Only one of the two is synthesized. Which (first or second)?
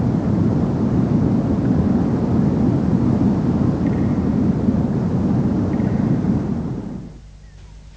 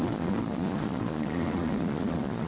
second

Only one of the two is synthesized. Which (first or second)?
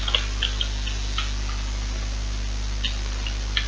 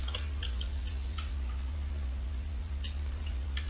second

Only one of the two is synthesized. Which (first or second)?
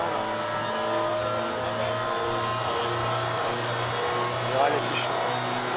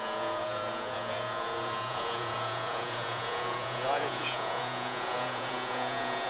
second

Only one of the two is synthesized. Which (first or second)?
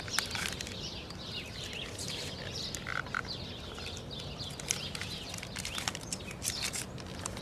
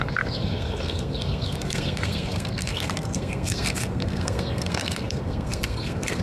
second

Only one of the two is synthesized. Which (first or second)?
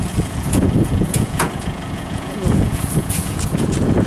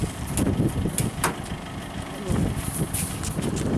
first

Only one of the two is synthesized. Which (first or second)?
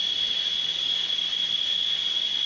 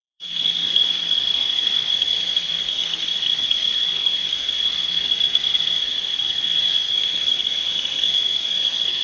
second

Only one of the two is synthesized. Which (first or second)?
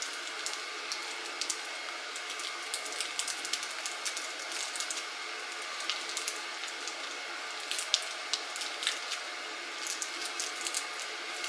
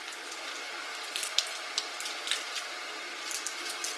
second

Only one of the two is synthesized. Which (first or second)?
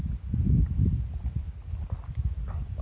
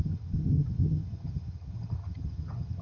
second